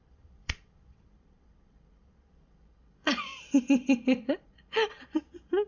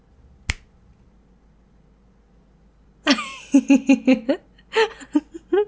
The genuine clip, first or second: second